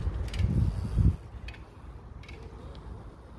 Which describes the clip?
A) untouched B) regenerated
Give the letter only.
A